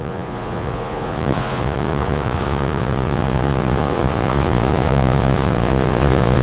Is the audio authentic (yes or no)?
no